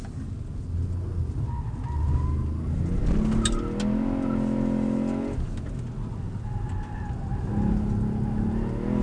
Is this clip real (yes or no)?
yes